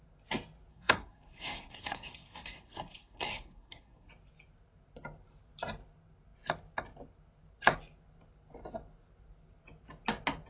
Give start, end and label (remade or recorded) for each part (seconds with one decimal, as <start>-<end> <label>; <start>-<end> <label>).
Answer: 0.0-0.7 recorded; 0.7-4.1 remade; 4.1-10.5 recorded

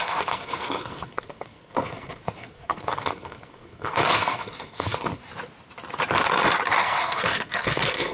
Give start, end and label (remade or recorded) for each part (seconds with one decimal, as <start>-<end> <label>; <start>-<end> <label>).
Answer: 0.0-5.2 remade; 5.2-6.8 recorded; 6.8-8.1 remade

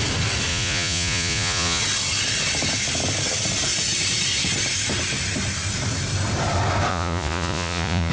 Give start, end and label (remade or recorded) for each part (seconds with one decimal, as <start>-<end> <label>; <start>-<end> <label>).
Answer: 0.0-0.5 recorded; 0.5-1.8 remade; 1.8-6.9 recorded; 6.9-8.1 remade